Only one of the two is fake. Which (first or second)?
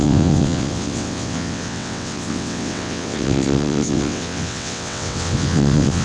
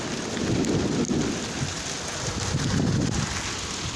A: first